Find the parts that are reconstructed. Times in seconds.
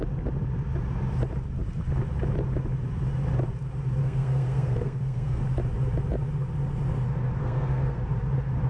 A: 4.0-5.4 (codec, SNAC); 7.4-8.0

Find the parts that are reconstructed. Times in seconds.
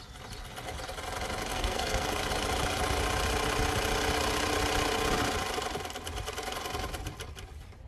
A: 1.5-2.3 (codec, SNAC)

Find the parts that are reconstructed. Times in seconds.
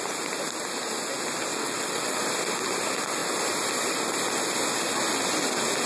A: 1.5-2.2 (vocoder, WaveNeXt)